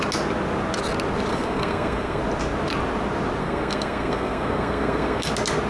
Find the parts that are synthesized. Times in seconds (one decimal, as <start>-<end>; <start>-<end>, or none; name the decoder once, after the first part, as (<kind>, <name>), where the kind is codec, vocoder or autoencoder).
1.3-2.2 (codec, SNAC); 3.4-5.3